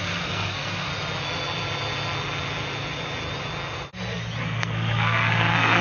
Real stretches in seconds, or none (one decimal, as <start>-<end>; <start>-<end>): 0.9-4.4